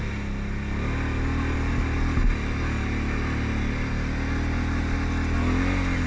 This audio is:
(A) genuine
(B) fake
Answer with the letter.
A